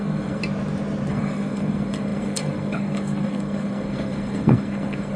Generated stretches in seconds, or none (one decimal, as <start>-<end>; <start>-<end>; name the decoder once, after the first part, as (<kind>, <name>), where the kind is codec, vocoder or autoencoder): 0.0-0.4 (codec, SNAC); 1.1-5.2